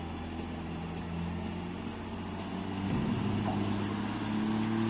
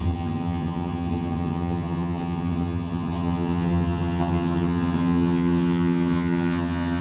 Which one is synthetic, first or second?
second